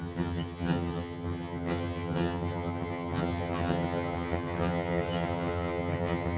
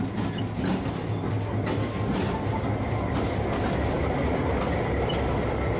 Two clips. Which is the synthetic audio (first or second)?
first